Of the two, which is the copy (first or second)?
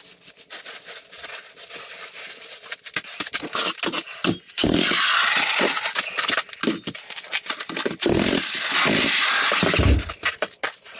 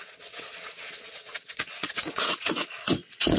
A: second